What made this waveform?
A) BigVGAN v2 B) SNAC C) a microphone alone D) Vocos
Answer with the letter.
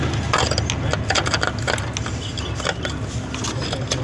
C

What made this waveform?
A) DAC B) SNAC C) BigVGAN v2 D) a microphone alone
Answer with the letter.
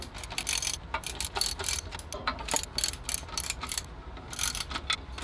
D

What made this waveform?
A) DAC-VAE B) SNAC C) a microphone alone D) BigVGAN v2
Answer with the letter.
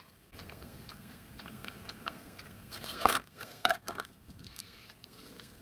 B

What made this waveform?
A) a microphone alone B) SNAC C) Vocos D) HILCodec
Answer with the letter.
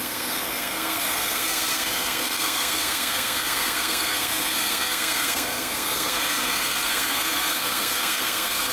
B